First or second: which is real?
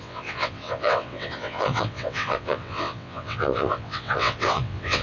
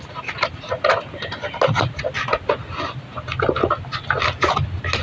second